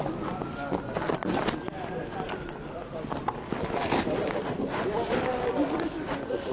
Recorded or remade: recorded